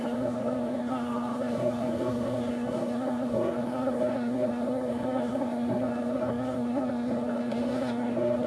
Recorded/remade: remade